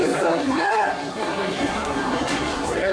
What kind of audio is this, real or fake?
fake